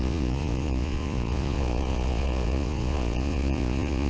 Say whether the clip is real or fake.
fake